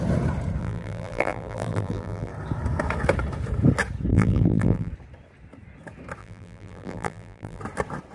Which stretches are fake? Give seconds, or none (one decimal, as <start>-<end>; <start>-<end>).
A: 0.6-2.3; 4.1-4.9; 6.2-7.6

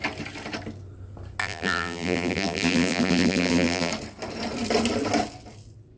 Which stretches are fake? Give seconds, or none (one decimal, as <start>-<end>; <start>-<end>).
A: 1.4-3.9

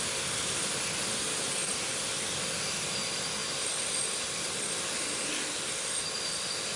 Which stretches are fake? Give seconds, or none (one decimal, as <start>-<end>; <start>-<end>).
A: 3.4-6.1

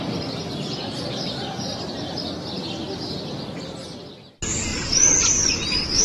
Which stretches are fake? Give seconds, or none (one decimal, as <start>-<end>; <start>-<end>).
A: 0.4-4.0; 4.7-5.3

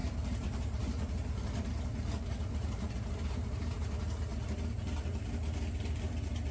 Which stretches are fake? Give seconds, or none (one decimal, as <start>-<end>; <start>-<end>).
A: 0.0-3.9; 4.3-5.2

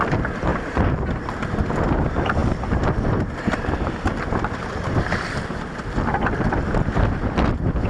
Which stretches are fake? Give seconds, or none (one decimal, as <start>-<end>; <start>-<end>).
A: 0.0-0.5; 1.0-2.4; 3.1-7.9

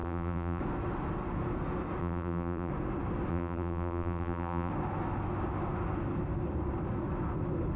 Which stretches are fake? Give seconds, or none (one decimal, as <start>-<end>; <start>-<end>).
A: 0.0-0.6; 2.0-2.7; 3.3-4.7